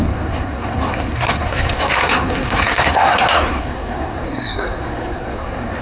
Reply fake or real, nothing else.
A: fake